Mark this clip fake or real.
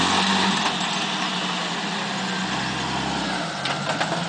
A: real